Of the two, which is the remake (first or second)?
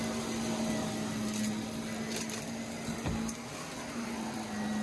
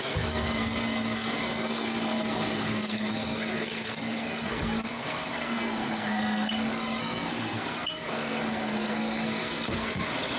second